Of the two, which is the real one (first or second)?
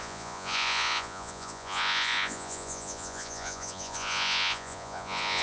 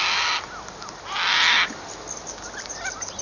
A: second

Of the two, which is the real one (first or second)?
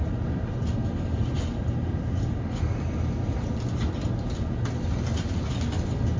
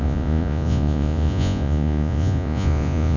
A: first